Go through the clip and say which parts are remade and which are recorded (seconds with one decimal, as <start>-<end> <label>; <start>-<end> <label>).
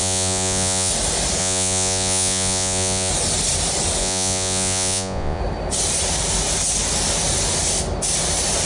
0.0-0.9 remade; 0.9-1.4 recorded; 1.4-3.1 remade; 3.1-4.0 recorded; 4.0-5.4 remade; 5.4-8.7 recorded